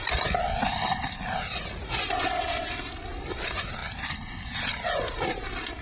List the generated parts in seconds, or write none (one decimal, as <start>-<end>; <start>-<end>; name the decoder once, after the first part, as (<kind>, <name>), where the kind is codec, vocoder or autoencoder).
1.5-2.1 (vocoder, Vocos)